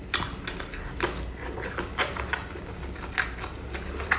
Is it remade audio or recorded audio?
recorded